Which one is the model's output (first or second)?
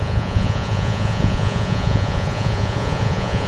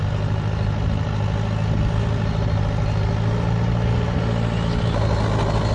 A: first